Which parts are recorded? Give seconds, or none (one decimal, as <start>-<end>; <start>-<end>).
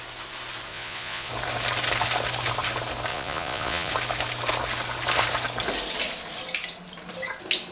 0.0-0.7; 1.3-3.1; 3.9-7.7